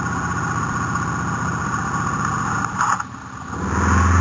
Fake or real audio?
real